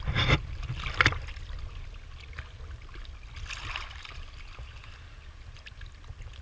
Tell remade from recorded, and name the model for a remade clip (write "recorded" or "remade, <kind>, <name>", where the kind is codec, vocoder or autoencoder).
recorded